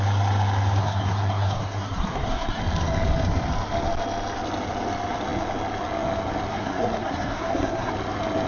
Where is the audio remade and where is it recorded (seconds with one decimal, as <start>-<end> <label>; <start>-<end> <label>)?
0.0-0.8 recorded; 0.8-2.6 remade; 2.6-6.5 recorded; 6.5-7.9 remade; 7.9-8.5 recorded